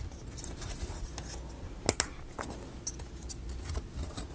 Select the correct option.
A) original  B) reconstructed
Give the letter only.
A